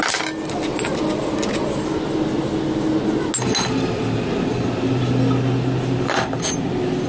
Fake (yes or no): no